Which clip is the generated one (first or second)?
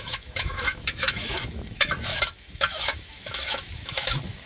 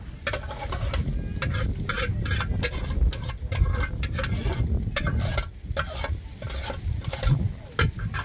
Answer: first